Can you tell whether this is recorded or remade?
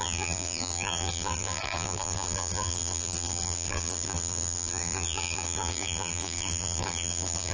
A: remade